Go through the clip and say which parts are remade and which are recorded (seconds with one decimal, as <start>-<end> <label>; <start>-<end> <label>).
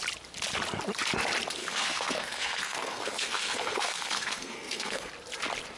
0.0-1.6 recorded; 1.6-5.1 remade; 5.1-5.8 recorded